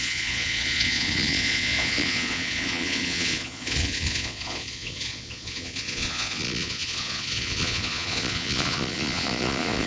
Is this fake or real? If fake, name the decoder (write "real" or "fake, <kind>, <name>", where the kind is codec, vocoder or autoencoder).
fake, vocoder, Vocos